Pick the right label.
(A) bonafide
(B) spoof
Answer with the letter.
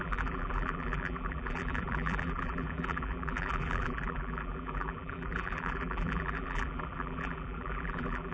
B